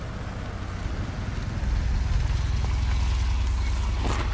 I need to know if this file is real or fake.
real